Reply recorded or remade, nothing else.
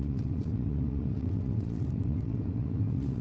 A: remade